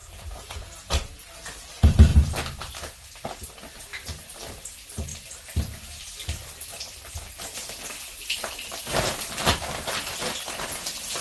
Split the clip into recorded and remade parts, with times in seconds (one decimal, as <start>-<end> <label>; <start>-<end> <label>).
0.0-1.2 remade; 1.2-11.2 recorded